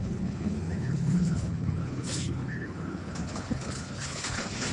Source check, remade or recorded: remade